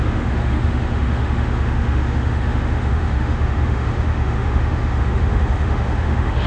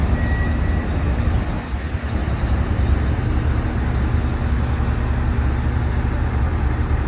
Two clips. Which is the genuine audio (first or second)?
second